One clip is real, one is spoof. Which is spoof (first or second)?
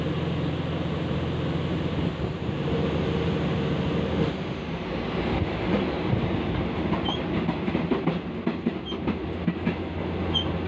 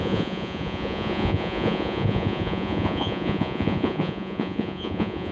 second